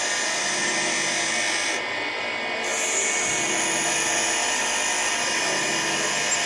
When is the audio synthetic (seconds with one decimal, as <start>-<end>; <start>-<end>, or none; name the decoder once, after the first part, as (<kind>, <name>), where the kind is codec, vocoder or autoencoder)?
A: none